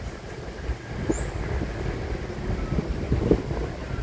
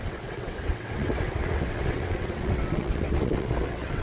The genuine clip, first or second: first